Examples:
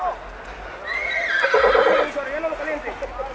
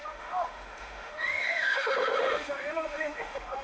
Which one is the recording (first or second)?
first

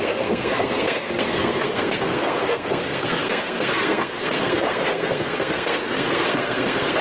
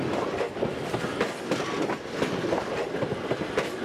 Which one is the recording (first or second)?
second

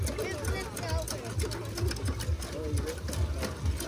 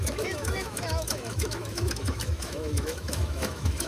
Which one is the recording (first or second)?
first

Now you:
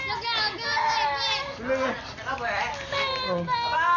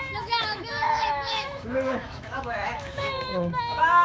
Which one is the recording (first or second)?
first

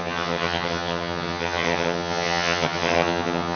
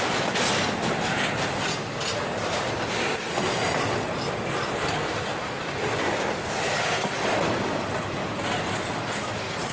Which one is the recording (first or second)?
second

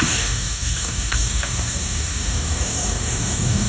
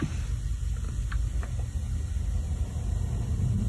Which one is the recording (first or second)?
second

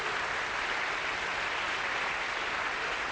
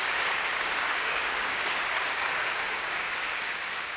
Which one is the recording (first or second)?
first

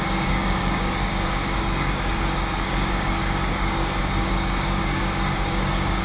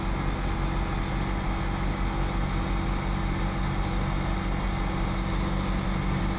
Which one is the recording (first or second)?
second